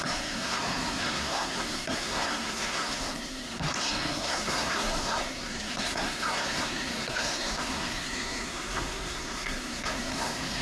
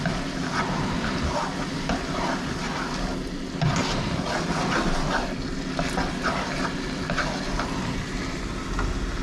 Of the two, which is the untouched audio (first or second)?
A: second